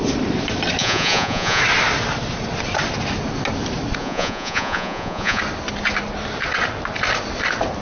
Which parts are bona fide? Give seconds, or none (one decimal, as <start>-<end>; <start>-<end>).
0.0-0.8; 1.6-4.0; 5.4-7.8